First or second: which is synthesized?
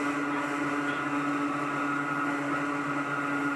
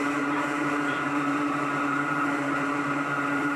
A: second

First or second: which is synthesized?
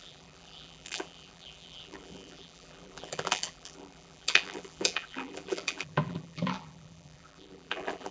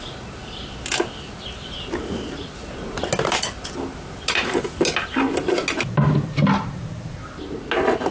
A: first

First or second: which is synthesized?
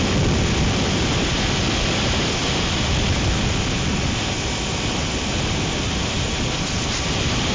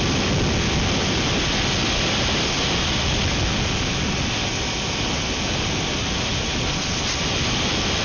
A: first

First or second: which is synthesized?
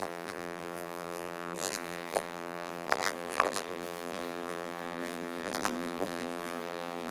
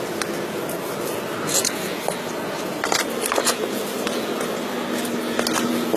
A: first